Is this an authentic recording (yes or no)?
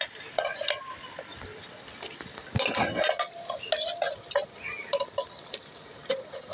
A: yes